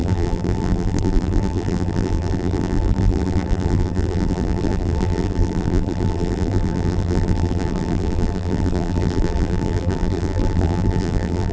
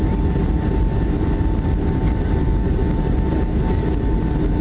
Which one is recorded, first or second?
second